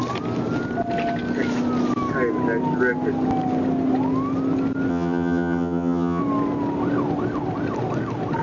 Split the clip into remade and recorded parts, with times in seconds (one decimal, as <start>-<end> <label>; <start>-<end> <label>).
0.0-4.9 recorded; 4.9-6.2 remade; 6.2-8.4 recorded